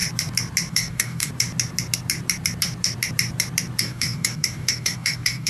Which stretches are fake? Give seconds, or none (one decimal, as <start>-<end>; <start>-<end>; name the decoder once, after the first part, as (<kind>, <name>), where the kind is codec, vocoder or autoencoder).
0.7-1.3 (codec, DAC); 3.8-5.5